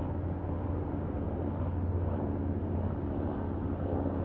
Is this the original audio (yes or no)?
yes